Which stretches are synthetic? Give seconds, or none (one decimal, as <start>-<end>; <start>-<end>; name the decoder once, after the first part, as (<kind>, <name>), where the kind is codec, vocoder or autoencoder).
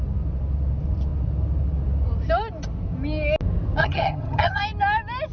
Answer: 3.8-4.6 (vocoder, HiFi-GAN)